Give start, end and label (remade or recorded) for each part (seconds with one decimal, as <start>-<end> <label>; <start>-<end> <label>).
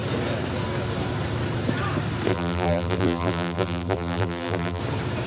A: 0.0-2.3 recorded; 2.3-4.8 remade; 4.8-5.3 recorded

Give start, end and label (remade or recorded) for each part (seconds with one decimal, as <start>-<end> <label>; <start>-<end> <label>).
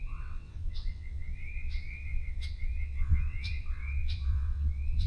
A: 0.0-5.1 remade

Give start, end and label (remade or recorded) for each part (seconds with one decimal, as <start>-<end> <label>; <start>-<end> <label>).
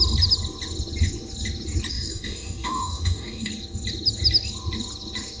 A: 0.0-1.9 recorded; 1.9-3.5 remade; 3.5-5.4 recorded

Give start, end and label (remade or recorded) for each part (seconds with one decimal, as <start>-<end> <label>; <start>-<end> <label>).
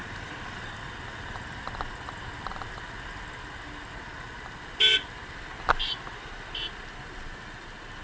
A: 0.0-1.0 remade; 1.0-8.0 recorded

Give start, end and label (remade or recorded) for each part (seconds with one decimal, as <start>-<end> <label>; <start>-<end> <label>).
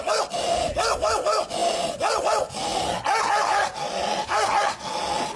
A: 0.0-5.4 recorded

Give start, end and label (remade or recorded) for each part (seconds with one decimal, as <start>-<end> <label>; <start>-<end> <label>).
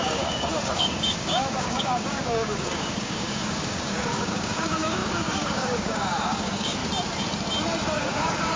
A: 0.0-6.8 remade; 6.8-7.9 recorded; 7.9-8.6 remade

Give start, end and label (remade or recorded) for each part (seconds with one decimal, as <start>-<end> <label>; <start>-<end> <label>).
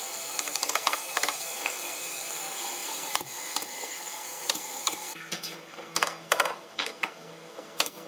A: 0.0-8.1 remade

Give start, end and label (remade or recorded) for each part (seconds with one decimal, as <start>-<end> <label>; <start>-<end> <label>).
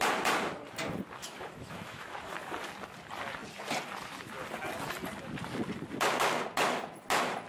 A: 0.0-1.2 recorded; 1.2-2.3 remade; 2.3-7.5 recorded